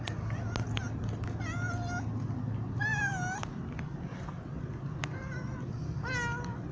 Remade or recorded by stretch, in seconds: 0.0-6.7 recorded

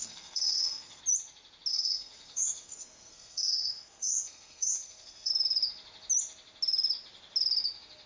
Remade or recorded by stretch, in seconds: 0.0-1.0 remade; 1.0-1.7 recorded; 1.7-5.3 remade; 5.3-8.1 recorded